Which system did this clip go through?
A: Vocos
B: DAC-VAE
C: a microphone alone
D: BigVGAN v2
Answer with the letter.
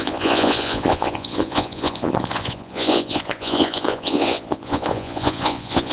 A